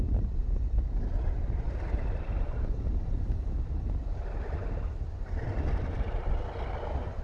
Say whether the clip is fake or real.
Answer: real